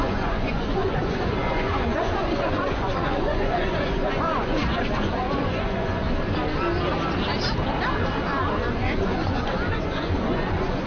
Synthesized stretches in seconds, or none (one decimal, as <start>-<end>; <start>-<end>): 0.0-6.0; 8.7-10.9